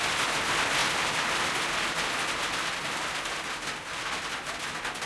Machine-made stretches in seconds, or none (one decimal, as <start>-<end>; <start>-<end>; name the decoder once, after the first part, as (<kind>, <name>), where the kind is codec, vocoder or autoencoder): none